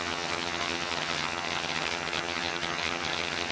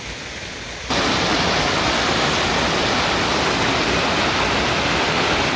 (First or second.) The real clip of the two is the second